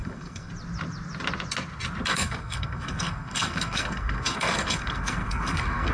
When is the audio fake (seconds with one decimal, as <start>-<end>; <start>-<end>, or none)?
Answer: 0.0-0.5; 2.1-5.9